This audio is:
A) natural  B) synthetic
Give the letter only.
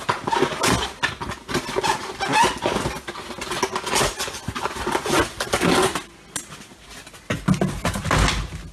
A